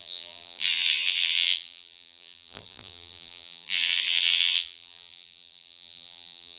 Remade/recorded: remade